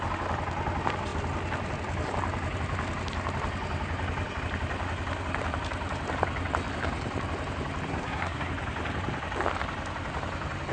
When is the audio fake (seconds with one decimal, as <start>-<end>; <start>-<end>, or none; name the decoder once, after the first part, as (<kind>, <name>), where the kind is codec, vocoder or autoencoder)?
7.9-8.5 (codec, SNAC)